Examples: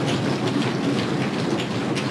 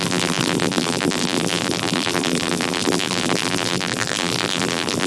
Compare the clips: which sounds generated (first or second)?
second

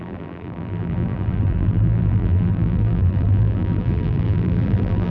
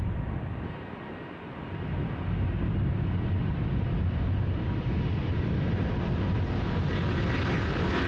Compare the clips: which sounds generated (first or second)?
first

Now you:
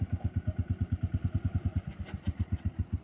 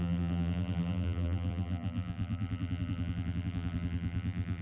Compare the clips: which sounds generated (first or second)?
second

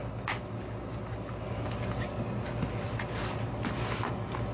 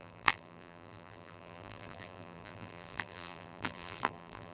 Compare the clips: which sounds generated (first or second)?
second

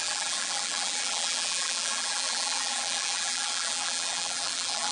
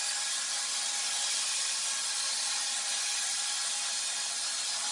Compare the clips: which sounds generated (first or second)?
first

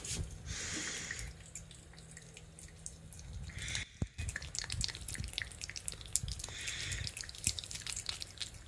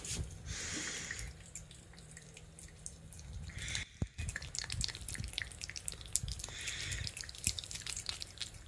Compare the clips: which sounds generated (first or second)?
second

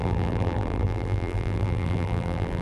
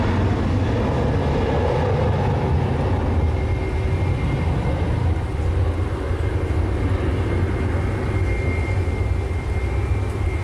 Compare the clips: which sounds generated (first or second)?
first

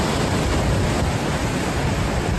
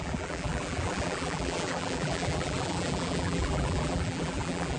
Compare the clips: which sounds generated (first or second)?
second